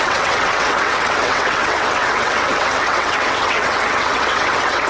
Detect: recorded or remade remade